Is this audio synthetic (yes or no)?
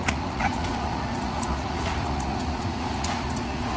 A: yes